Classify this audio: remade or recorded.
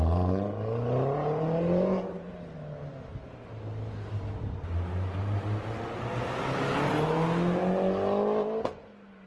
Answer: recorded